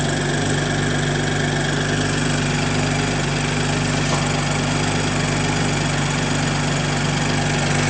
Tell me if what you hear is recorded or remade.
recorded